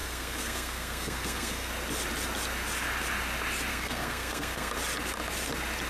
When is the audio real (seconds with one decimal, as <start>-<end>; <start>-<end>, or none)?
1.7-3.7; 4.7-5.9

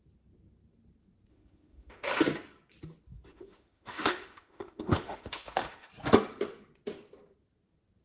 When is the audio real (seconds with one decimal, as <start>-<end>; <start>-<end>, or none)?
0.0-1.3; 2.2-3.3; 5.9-8.0